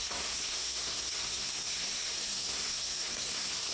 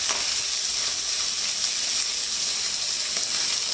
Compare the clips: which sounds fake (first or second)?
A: first